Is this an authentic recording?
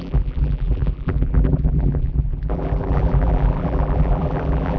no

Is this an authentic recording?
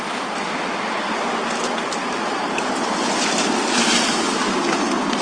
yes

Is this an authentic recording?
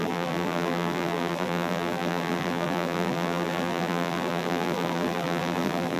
no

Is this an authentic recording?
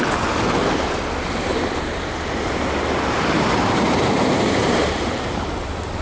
no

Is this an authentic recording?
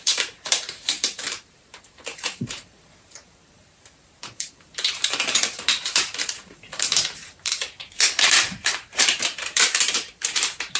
no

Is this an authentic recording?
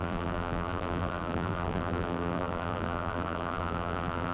no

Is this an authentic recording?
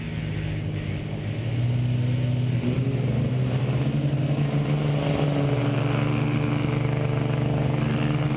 yes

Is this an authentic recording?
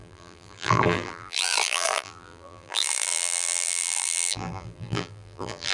no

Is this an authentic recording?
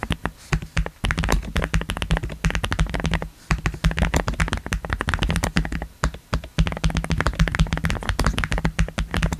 yes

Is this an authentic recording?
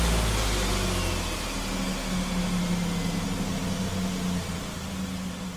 yes